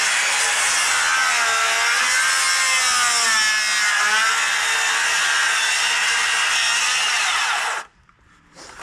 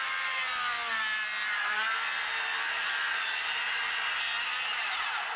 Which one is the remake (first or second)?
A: second